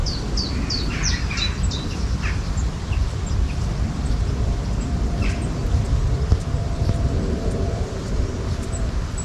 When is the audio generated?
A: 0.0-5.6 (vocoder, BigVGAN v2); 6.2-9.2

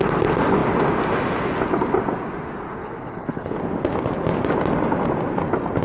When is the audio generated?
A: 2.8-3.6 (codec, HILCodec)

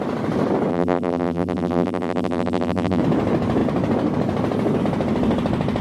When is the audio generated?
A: 0.7-3.0 (vocoder, BigVGAN v2)